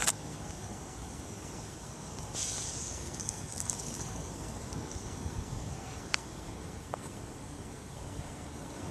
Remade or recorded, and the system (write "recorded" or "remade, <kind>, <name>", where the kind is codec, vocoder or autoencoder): remade, codec, SNAC